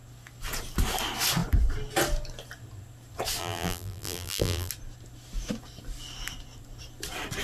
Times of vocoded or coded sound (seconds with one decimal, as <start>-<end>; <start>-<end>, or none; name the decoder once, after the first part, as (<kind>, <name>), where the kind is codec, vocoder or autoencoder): 3.4-4.7 (vocoder, BigVGAN v2)